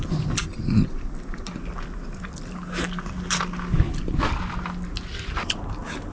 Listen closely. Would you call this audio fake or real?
real